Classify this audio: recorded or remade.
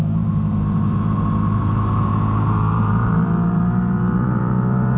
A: remade